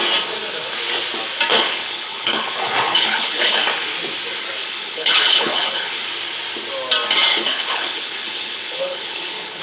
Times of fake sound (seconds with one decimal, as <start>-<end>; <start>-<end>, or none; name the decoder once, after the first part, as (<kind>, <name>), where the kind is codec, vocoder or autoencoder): 1.5-3.6 (codec, HILCodec); 4.6-6.0; 7.3-9.6